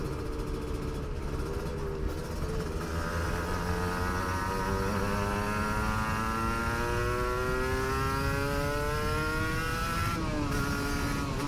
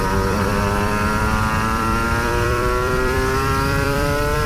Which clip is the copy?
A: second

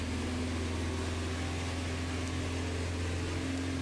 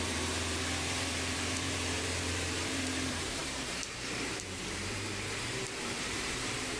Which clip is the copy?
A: second